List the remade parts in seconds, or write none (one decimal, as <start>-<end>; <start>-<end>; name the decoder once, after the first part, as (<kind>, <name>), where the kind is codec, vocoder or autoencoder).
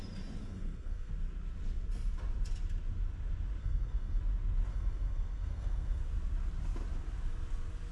0.4-1.1 (codec, SNAC); 3.6-4.2; 4.7-6.0